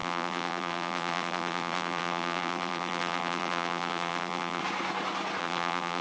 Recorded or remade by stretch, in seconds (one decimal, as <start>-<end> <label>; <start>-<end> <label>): 0.0-4.6 remade; 4.6-5.4 recorded; 5.4-6.0 remade